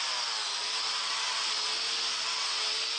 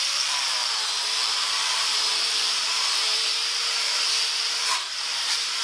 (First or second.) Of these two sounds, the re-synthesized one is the second